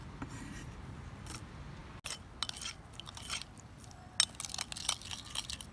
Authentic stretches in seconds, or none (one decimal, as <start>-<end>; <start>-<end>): 0.0-5.7